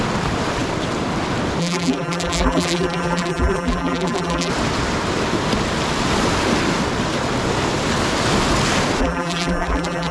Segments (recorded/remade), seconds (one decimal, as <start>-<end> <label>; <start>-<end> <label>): 0.0-1.6 recorded; 1.6-4.5 remade; 4.5-9.0 recorded; 9.0-10.1 remade